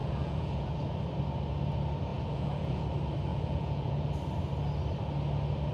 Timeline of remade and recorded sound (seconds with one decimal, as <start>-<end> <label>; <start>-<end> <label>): 0.0-0.7 remade; 0.7-2.1 recorded; 2.1-2.8 remade; 2.8-3.3 recorded; 3.3-4.1 remade; 4.1-5.7 recorded